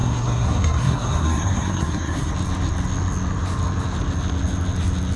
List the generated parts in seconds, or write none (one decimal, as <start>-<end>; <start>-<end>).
0.0-2.3